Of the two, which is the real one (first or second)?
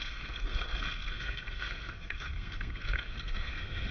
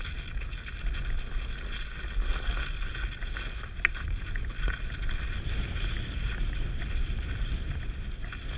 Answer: second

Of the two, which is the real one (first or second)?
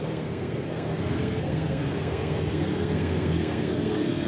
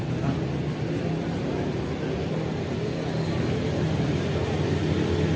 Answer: second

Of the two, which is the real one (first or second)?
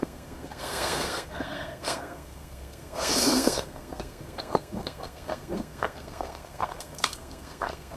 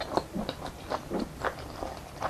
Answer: second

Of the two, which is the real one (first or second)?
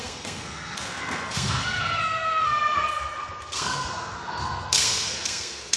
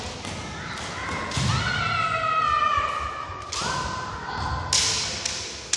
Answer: second